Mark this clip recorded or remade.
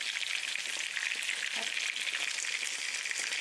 recorded